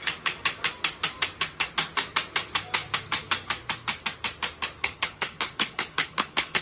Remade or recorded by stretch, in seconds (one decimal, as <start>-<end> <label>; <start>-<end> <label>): 0.0-4.8 recorded; 4.8-6.6 remade